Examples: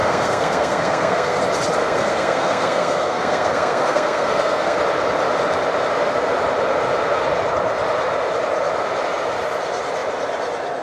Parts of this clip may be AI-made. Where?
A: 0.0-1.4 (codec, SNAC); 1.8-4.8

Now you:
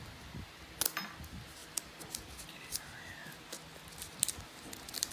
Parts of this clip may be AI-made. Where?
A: none

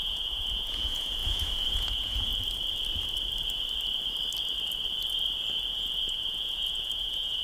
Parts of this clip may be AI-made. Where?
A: 0.0-2.3 (vocoder, Vocos); 5.7-7.4

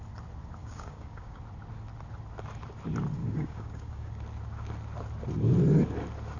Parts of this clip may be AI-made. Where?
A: 0.6-1.4 (codec, DAC); 3.2-4.1

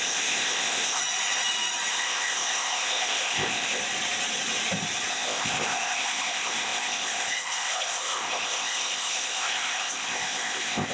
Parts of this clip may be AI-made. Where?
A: 0.0-1.0 (codec, ZipCodec); 1.9-3.8; 5.1-10.9

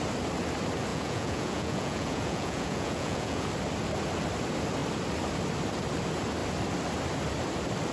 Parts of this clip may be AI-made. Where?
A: 0.9-3.5 (vocoder, Vocos)

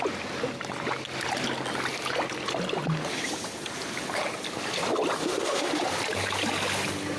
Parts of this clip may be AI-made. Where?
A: 5.2-5.7 (autoencoder, DAC-VAE)